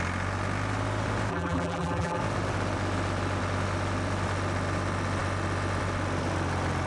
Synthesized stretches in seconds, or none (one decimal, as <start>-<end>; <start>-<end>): 1.3-2.2